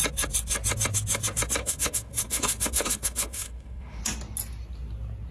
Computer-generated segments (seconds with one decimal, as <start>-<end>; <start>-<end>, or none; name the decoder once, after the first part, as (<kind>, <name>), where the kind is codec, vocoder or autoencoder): 1.6-4.0 (autoencoder, DAC-VAE)